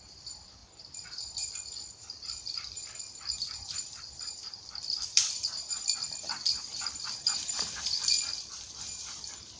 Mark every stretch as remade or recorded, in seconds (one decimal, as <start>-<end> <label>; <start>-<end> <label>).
0.0-8.0 remade; 8.0-9.6 recorded